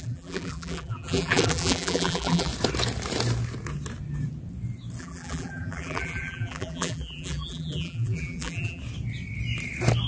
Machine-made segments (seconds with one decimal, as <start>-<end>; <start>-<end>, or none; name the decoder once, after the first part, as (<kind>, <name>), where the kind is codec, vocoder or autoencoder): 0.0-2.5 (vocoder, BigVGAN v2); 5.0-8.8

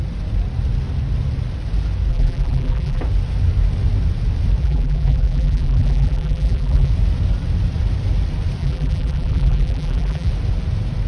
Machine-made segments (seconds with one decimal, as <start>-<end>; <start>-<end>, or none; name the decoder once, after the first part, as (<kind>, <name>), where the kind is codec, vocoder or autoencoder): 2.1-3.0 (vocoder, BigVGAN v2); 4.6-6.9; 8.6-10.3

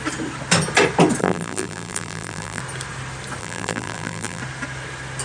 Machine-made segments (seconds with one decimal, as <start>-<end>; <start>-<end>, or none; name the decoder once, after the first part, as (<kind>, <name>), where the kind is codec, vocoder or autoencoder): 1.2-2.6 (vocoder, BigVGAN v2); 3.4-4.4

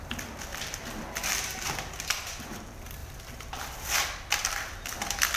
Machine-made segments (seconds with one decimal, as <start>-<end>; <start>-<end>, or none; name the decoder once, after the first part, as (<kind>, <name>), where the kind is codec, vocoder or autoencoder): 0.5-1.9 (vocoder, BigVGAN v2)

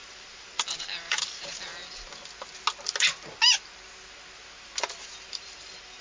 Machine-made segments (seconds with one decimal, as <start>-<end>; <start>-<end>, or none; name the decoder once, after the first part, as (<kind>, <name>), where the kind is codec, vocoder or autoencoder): 0.0-1.7 (vocoder, BigVGAN v2); 5.3-6.0